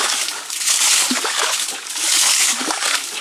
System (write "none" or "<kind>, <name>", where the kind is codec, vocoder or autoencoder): codec, DAC